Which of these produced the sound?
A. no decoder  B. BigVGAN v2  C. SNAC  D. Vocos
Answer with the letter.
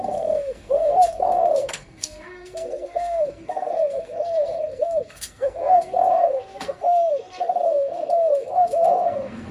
C